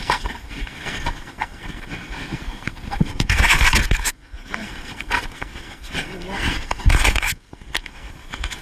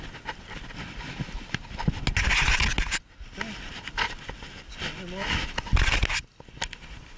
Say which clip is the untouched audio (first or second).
second